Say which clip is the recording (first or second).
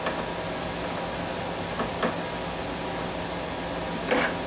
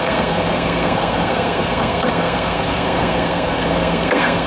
first